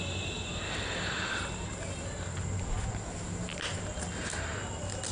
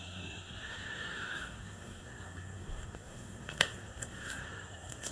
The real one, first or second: first